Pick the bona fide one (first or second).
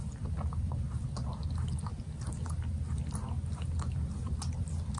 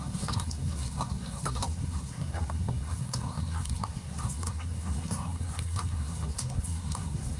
first